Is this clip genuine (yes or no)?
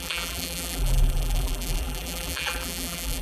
no